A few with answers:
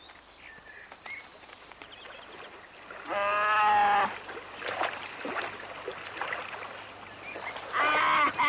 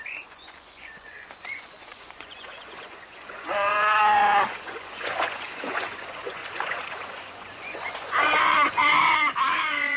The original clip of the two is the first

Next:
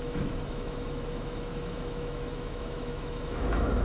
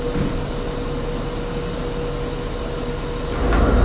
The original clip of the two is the second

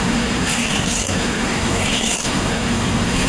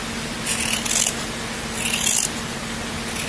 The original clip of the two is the second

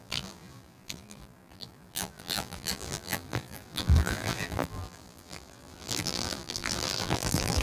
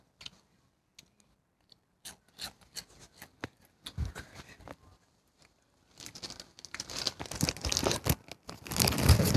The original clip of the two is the second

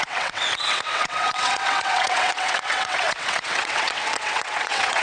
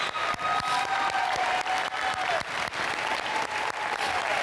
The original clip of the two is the second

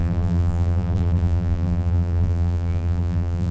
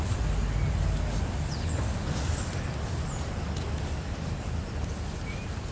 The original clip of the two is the second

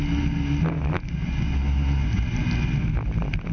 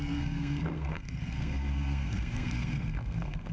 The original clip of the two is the first